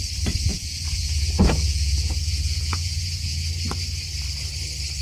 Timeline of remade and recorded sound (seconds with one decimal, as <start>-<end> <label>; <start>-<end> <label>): 0.0-0.5 recorded; 0.5-3.5 remade; 3.5-5.0 recorded